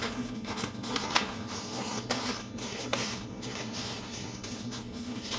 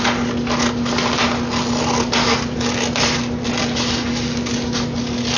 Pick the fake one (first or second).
first